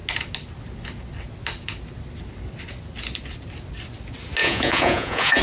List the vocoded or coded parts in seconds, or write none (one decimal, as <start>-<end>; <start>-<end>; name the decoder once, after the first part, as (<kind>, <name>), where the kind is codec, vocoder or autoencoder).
4.4-5.4 (vocoder, Vocos)